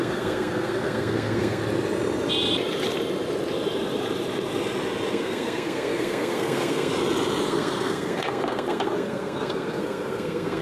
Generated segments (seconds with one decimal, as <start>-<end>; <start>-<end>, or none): 0.0-1.6; 5.1-6.9; 7.4-10.6